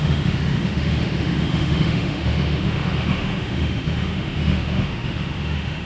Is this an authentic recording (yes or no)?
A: no